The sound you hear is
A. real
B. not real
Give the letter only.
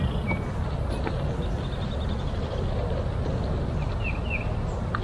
A